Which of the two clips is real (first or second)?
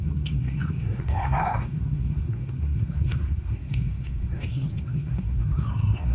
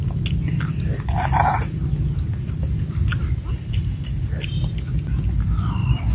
second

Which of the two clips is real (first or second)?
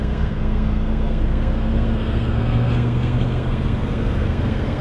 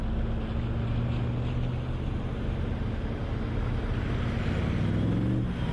second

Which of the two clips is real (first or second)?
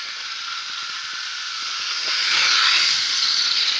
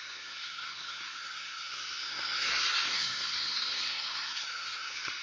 first